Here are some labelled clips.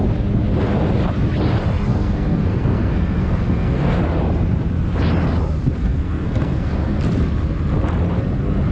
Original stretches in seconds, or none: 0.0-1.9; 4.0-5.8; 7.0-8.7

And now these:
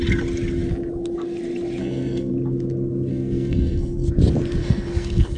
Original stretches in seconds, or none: 0.0-1.8; 2.3-3.1; 4.1-4.6

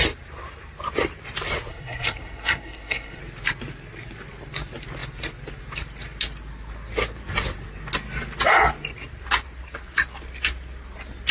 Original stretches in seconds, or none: 0.0-1.7; 3.2-11.3

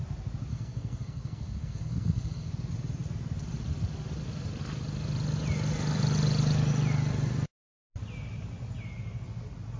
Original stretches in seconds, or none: 0.0-0.5; 2.5-9.8